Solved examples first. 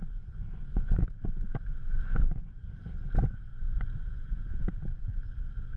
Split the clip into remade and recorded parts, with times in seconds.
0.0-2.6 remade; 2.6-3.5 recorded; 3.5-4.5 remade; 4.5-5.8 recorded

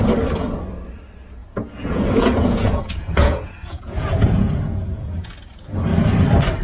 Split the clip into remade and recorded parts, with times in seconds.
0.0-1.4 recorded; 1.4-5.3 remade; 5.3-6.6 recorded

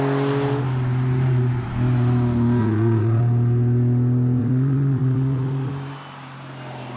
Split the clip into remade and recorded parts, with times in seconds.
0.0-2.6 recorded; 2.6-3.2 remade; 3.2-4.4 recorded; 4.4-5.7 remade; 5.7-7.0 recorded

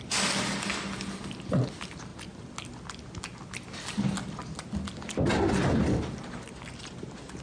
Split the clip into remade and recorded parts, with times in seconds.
0.0-7.4 recorded

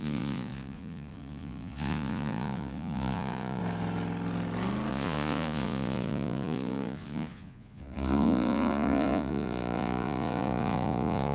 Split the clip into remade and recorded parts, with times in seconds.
0.0-3.6 remade; 3.6-4.9 recorded; 4.9-11.3 remade

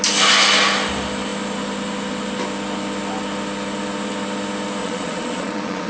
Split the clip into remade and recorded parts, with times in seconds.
0.0-4.8 recorded; 4.8-5.9 remade

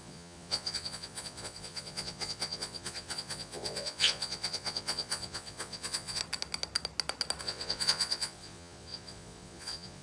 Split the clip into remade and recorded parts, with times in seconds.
0.0-6.2 remade; 6.2-7.4 recorded; 7.4-10.0 remade